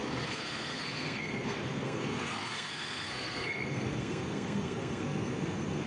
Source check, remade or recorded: remade